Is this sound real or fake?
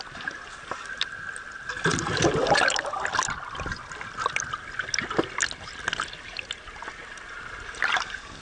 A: real